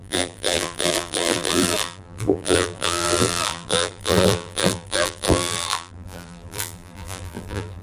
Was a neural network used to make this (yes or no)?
yes